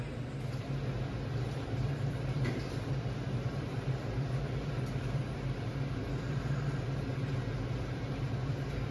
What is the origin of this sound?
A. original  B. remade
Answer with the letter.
B